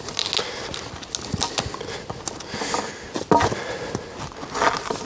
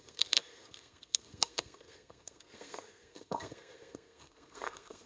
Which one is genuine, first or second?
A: first